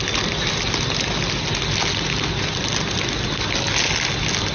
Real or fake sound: real